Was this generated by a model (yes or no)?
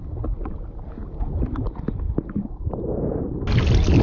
no